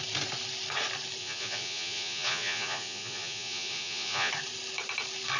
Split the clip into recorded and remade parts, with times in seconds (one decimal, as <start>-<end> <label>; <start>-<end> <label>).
0.0-1.2 recorded; 1.2-4.3 remade; 4.3-5.4 recorded